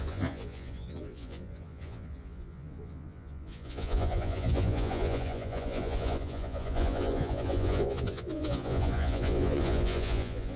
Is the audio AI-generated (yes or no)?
yes